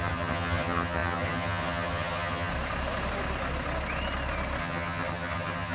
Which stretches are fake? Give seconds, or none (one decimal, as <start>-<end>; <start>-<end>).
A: 0.0-2.5; 4.6-5.7